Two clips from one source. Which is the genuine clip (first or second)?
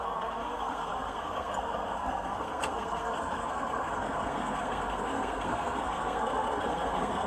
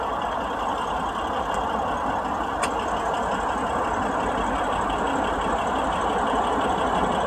second